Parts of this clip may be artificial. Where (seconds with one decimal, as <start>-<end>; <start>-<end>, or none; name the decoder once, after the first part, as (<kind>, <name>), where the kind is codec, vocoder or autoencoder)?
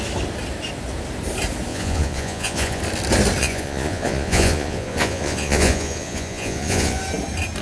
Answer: 1.7-2.8 (vocoder, Vocos); 3.4-7.0